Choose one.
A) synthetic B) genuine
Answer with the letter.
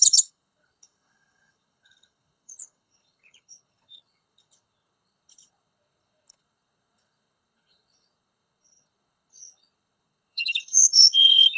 A